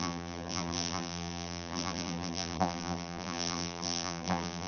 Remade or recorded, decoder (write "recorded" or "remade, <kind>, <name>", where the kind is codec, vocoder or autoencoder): remade, vocoder, BigVGAN v2